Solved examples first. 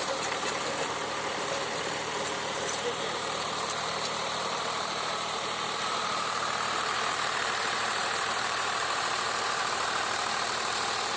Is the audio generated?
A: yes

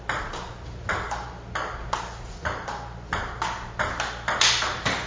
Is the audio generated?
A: no